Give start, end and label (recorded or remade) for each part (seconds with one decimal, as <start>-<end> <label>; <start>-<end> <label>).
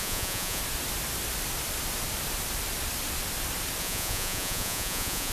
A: 0.0-0.6 remade; 0.6-3.8 recorded; 3.8-5.3 remade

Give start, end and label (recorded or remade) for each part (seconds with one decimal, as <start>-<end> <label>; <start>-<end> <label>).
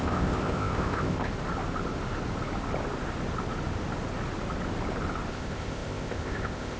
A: 0.0-1.3 remade; 1.3-5.3 recorded; 5.3-6.8 remade